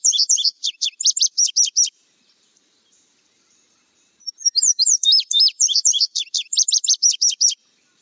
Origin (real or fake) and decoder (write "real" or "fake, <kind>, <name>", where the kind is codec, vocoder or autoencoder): fake, vocoder, BigVGAN v2